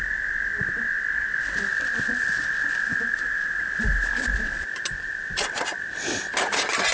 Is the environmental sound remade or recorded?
recorded